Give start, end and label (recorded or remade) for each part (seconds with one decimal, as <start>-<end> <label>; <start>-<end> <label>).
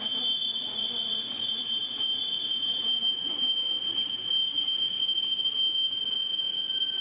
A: 0.0-0.6 recorded; 0.6-1.3 remade; 1.3-7.0 recorded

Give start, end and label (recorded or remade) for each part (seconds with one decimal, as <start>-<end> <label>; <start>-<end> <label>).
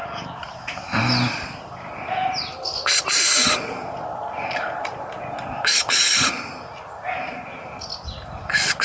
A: 0.0-8.8 recorded